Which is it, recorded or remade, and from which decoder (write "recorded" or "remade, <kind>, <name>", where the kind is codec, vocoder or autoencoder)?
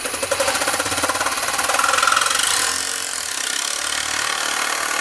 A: recorded